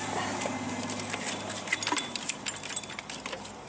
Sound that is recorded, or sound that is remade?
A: recorded